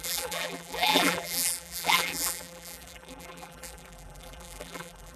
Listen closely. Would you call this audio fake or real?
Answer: fake